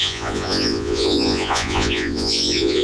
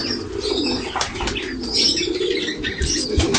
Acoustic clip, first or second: second